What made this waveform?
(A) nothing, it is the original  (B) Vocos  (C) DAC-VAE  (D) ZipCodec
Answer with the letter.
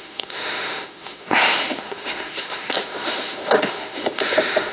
C